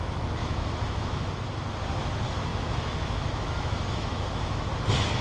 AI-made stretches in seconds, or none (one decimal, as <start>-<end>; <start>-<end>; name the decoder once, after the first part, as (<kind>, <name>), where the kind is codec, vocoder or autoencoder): 0.4-1.3 (autoencoder, DAC-VAE); 2.5-4.7